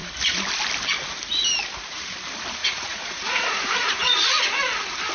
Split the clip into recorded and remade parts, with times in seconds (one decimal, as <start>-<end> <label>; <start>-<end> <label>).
0.0-2.6 recorded; 2.6-4.3 remade; 4.3-5.1 recorded